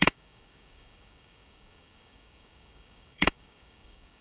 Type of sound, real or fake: fake